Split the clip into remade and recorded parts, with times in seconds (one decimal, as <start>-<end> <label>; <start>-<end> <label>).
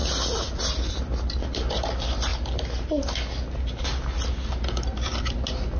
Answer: 0.0-5.8 recorded